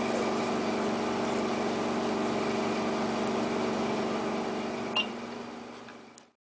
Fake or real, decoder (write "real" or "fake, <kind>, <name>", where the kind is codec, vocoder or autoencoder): real